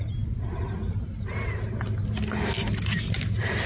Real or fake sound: real